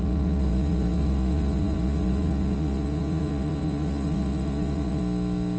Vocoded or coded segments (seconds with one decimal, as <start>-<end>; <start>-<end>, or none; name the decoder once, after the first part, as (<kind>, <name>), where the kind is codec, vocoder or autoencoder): 0.0-5.0 (vocoder, Vocos)